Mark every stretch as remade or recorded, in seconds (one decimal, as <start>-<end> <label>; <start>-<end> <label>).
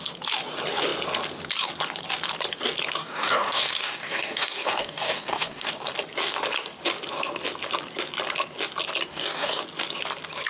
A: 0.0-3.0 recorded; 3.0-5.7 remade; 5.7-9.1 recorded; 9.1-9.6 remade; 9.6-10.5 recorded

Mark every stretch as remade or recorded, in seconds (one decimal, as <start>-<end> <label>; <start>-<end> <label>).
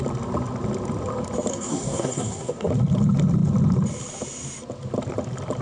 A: 0.0-1.5 recorded; 1.5-2.7 remade; 2.7-5.6 recorded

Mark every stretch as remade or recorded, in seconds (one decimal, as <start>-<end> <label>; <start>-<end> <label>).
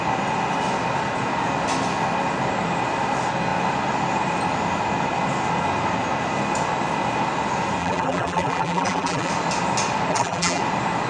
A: 0.0-7.8 recorded; 7.8-9.3 remade; 9.3-10.1 recorded; 10.1-10.6 remade; 10.6-11.1 recorded